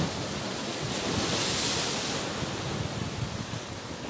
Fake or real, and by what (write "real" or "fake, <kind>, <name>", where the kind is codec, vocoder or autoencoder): real